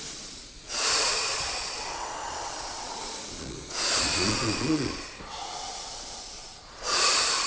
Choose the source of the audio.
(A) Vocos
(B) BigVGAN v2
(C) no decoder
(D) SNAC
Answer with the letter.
A